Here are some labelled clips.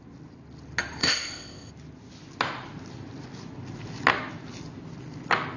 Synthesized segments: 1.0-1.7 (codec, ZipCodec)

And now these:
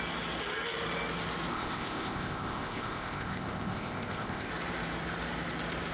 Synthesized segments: 1.5-4.5 (codec, ZipCodec)

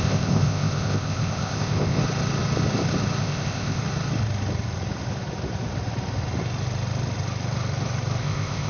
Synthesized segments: 0.0-2.0 (codec, ZipCodec); 3.2-3.8; 8.2-8.7

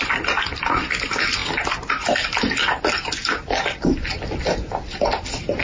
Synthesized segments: none